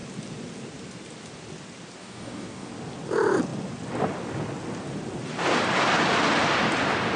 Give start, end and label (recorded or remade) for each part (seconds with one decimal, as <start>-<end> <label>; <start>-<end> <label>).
0.0-2.0 recorded; 2.0-2.7 remade; 2.7-7.2 recorded